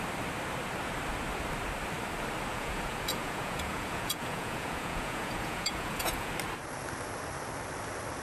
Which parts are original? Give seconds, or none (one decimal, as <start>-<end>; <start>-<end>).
0.0-2.5; 6.3-8.2